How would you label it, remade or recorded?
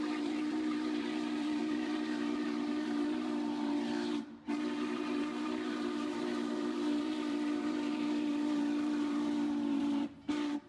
remade